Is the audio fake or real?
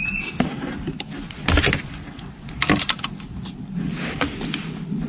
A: real